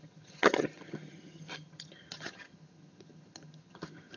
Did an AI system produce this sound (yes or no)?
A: yes